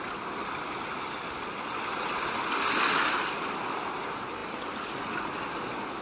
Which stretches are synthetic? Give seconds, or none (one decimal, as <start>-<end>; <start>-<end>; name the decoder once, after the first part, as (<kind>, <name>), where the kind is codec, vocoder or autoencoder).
none